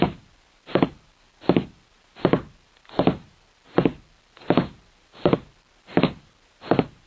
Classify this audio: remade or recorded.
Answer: recorded